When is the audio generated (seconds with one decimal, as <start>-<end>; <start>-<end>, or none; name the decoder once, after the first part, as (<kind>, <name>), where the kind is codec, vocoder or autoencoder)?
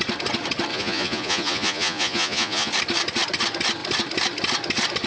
0.7-2.7 (vocoder, Vocos)